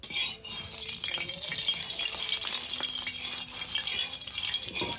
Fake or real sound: real